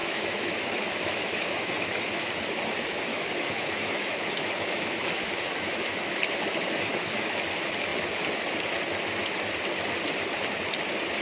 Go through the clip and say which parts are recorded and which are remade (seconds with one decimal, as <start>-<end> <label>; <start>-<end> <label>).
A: 0.0-2.3 remade; 2.3-3.1 recorded; 3.1-7.4 remade; 7.4-11.2 recorded